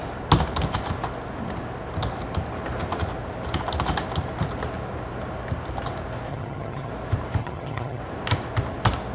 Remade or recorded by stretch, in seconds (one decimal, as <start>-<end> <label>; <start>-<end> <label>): 0.0-6.3 recorded; 6.3-6.9 remade; 6.9-7.4 recorded; 7.4-8.0 remade; 8.0-9.1 recorded